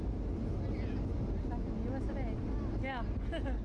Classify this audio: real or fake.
real